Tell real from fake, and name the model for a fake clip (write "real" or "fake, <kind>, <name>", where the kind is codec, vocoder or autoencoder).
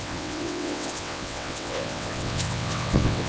fake, vocoder, WaveNeXt